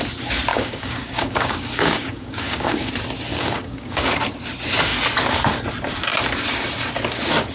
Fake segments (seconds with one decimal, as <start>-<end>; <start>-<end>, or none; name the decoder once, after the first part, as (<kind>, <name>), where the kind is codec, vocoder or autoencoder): 0.5-2.9 (codec, DAC); 3.3-4.1